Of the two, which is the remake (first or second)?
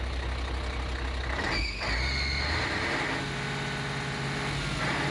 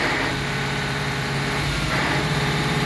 second